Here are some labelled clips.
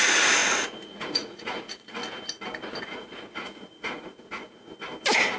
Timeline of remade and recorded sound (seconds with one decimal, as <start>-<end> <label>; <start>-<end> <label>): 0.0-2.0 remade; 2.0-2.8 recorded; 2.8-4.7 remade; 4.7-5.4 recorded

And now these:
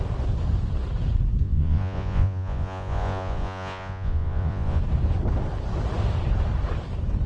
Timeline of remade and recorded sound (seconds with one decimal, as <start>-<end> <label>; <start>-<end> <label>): 0.0-1.4 recorded; 1.4-4.8 remade; 4.8-7.3 recorded

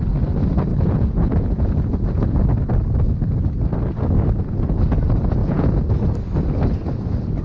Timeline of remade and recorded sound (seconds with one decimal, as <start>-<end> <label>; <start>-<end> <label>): 0.0-0.7 recorded; 0.7-2.5 remade; 2.5-5.4 recorded; 5.4-5.9 remade; 5.9-7.4 recorded